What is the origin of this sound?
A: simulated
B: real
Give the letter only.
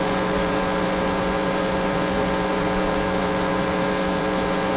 A